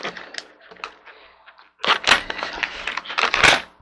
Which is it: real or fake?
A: real